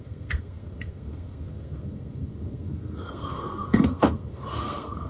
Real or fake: fake